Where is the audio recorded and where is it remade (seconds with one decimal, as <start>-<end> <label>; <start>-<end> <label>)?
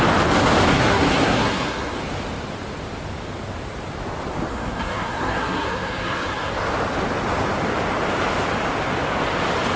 0.0-0.7 recorded; 0.7-2.0 remade; 2.0-4.5 recorded; 4.5-6.5 remade; 6.5-9.8 recorded